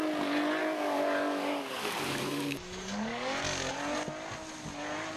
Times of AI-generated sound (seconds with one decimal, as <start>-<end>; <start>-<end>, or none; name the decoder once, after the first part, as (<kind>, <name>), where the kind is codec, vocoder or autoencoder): 0.6-3.7 (codec, DAC)